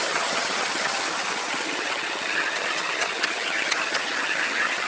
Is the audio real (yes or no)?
no